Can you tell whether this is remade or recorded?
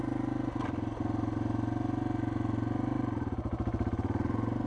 recorded